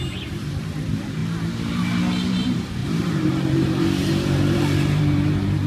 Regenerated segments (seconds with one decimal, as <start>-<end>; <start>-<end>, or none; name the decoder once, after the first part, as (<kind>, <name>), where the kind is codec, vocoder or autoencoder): 0.0-1.2 (vocoder, BigVGAN v2); 2.3-5.7

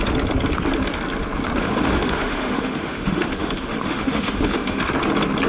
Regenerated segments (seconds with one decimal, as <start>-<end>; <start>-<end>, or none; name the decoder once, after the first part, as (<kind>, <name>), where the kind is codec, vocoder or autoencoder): 1.6-4.9 (autoencoder, DAC-VAE)

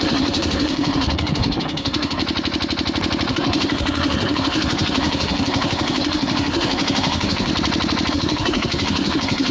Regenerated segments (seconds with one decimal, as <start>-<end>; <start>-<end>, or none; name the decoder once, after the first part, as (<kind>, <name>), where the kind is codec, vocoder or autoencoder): 0.0-2.2 (codec, SNAC); 3.3-7.5; 8.1-9.5

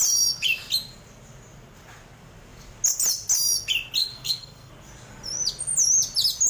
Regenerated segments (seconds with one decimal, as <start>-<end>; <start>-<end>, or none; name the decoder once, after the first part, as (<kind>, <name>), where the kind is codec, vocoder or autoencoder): 4.0-4.7 (codec, SNAC)

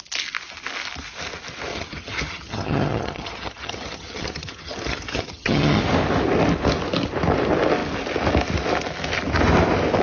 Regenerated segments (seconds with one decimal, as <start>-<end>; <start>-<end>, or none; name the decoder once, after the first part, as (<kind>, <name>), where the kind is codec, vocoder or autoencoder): 1.7-5.8 (vocoder, HiFi-GAN)

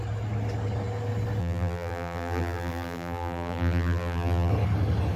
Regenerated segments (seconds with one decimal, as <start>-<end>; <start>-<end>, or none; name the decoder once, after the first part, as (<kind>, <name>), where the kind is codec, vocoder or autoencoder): 1.4-4.5 (vocoder, BigVGAN v2)